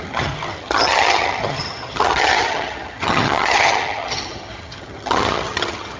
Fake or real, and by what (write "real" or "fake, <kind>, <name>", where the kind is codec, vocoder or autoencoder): fake, vocoder, HiFi-GAN